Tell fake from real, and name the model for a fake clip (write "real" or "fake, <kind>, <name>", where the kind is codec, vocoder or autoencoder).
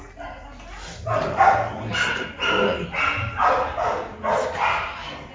real